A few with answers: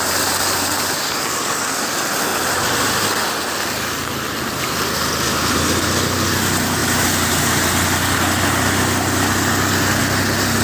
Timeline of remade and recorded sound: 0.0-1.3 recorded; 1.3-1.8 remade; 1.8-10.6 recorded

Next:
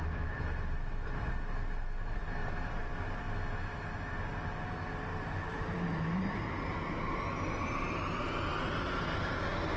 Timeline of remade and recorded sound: 0.0-2.4 recorded; 2.4-3.2 remade; 3.2-5.1 recorded; 5.1-6.2 remade; 6.2-9.8 recorded